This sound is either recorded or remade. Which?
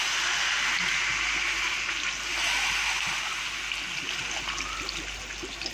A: recorded